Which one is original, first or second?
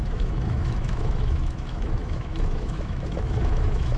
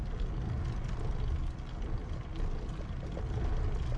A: second